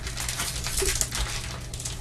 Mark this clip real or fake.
real